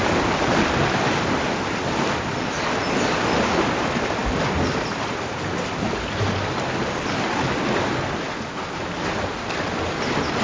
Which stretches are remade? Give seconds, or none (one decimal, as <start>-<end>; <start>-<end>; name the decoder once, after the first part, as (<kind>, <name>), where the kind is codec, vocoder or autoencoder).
none